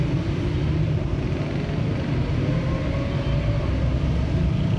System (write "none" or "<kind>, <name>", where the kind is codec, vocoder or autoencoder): none